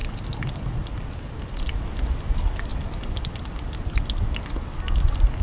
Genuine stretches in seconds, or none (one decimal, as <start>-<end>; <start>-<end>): 0.0-5.4